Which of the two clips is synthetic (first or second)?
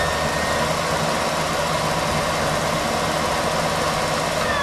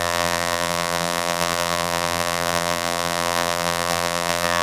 second